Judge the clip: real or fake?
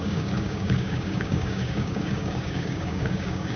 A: fake